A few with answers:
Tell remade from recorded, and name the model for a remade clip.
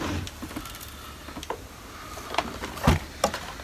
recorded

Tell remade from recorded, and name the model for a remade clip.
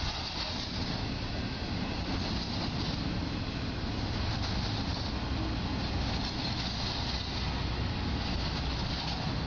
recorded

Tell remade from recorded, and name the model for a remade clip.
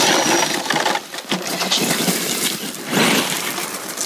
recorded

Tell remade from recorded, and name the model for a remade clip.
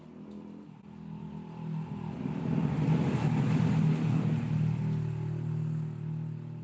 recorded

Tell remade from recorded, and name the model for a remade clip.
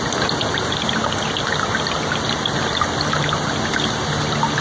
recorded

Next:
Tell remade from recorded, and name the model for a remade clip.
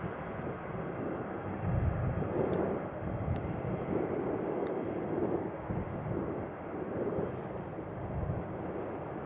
recorded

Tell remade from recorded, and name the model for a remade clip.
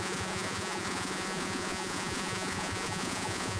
remade, vocoder, Vocos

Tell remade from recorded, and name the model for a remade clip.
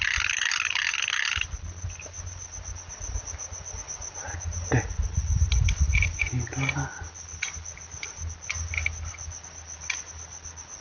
recorded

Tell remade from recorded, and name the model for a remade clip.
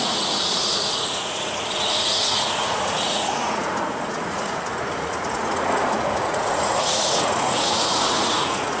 remade, vocoder, Vocos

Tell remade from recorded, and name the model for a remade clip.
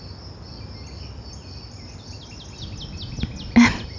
recorded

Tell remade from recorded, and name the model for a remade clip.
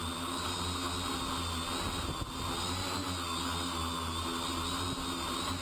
recorded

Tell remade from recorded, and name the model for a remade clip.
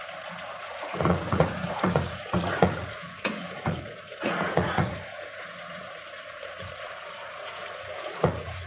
remade, vocoder, Vocos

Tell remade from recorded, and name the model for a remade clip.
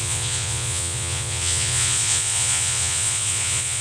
remade, vocoder, Vocos